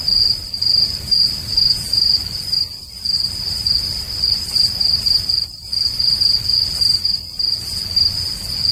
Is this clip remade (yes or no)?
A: yes